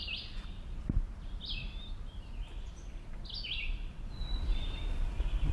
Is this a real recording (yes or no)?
yes